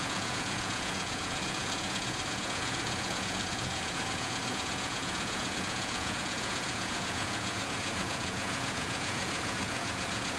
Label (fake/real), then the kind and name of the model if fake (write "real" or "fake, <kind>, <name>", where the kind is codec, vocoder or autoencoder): fake, vocoder, Vocos